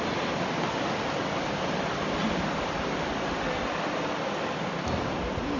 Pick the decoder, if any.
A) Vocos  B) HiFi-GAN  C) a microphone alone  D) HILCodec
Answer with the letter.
C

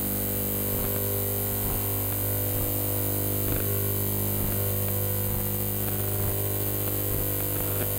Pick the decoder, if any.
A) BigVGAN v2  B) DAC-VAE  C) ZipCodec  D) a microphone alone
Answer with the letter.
D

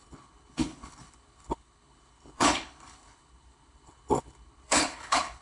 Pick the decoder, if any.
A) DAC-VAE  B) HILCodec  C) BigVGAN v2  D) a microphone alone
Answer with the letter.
B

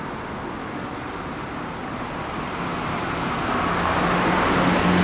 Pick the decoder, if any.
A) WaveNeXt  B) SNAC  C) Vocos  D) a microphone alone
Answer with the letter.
D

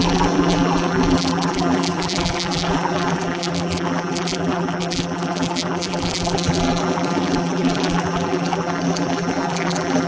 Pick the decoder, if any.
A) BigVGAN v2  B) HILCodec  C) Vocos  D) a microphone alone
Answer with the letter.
A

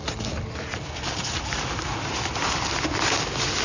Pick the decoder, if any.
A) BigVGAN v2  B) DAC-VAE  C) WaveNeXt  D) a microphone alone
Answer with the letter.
D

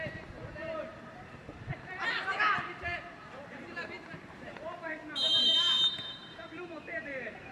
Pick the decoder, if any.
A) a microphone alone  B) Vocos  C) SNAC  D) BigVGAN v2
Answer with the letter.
D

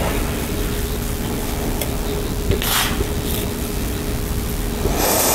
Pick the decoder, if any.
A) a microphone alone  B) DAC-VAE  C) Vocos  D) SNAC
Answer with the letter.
A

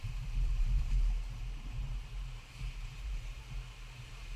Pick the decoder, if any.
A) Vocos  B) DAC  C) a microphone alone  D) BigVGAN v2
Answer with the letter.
D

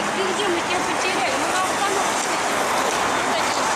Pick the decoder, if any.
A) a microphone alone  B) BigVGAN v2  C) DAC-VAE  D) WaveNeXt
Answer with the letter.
A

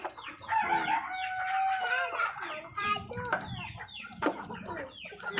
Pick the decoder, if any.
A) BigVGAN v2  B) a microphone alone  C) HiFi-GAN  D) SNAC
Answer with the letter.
B